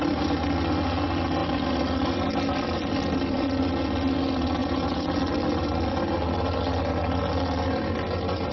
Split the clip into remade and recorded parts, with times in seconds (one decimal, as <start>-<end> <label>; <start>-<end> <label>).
0.0-4.6 recorded; 4.6-5.2 remade; 5.2-8.5 recorded